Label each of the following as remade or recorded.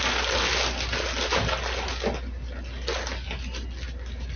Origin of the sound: recorded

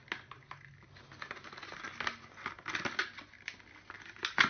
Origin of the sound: recorded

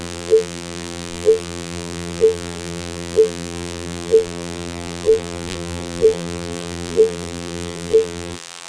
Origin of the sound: remade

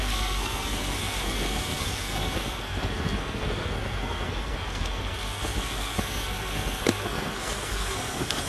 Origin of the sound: remade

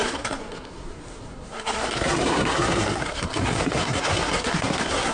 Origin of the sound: remade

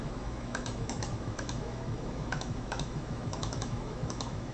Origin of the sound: remade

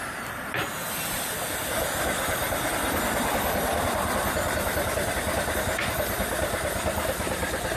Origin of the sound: recorded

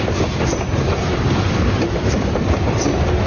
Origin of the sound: recorded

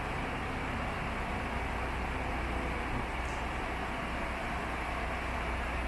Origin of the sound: recorded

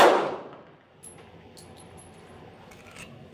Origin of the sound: recorded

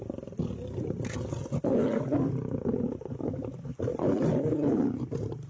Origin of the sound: recorded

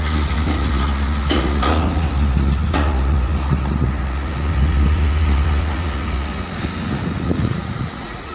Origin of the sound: remade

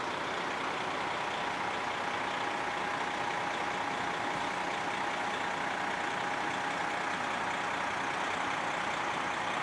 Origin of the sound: recorded